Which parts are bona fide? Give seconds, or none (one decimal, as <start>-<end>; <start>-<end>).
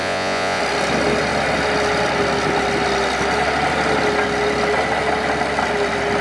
0.6-6.2